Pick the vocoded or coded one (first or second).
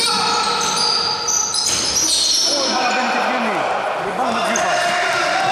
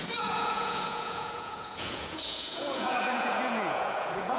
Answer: second